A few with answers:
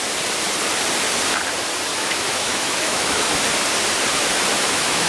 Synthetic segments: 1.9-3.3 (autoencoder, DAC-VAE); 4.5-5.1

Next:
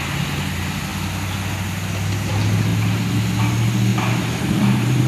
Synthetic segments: 3.9-5.1 (vocoder, BigVGAN v2)

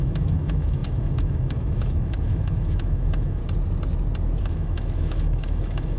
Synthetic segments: 0.0-3.4 (autoencoder, DAC-VAE); 4.4-6.0